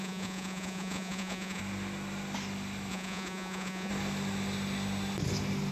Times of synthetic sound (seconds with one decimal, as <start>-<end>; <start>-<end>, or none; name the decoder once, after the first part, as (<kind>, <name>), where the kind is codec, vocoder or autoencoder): 0.0-1.6 (vocoder, Vocos); 2.9-3.9